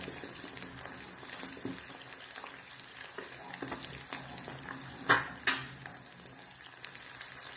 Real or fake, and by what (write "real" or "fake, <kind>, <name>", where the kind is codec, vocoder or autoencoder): real